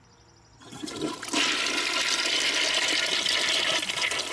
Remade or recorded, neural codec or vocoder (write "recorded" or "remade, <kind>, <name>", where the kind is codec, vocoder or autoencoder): recorded